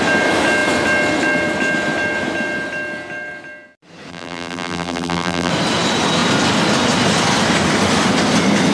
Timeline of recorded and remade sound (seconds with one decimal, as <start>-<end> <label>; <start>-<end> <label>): 0.0-4.1 recorded; 4.1-5.5 remade; 5.5-8.7 recorded